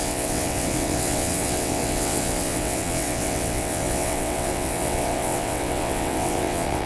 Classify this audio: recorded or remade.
remade